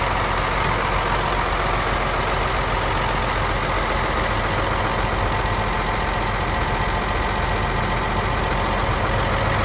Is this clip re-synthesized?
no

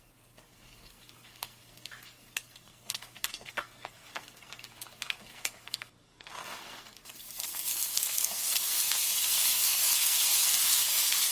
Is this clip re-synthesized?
yes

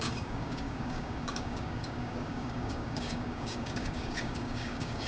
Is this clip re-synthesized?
yes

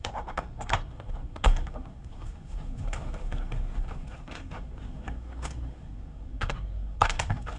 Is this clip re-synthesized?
yes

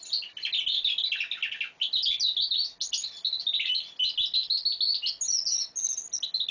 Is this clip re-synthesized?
no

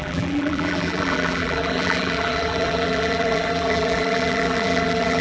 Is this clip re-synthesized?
yes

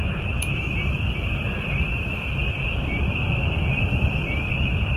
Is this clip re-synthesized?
yes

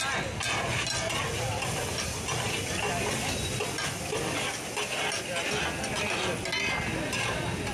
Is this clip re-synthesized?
no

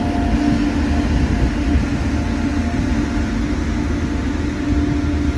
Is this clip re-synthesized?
no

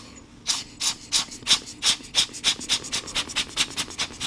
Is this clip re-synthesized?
no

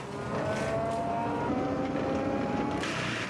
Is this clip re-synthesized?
no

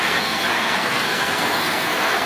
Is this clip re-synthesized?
yes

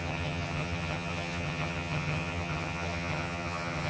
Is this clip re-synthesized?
yes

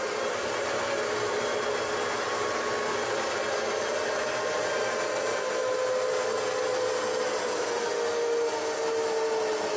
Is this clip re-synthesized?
no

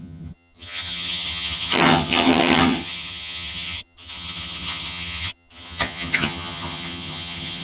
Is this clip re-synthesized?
yes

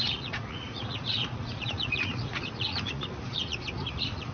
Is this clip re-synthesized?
yes